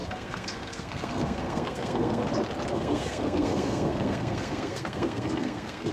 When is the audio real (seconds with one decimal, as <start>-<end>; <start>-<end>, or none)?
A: 2.2-2.7